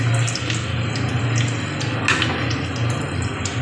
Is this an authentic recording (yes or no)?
yes